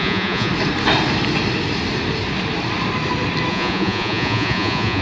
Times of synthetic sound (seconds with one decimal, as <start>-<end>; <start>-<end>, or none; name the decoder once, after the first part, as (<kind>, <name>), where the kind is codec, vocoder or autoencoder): 0.0-0.5 (vocoder, Vocos); 3.5-5.0